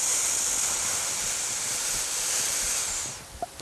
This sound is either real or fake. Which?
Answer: real